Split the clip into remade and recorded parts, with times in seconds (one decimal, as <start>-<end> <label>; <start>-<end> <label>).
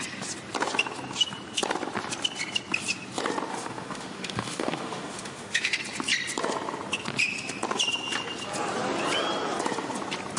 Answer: 0.0-3.5 recorded; 3.5-5.7 remade; 5.7-10.4 recorded